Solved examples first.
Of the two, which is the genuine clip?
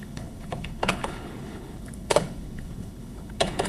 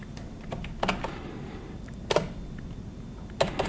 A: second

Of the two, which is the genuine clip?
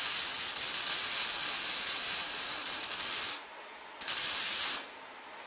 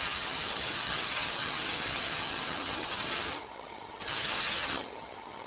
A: first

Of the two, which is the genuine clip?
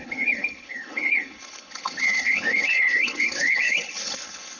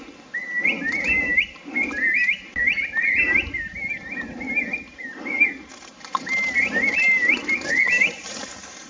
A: second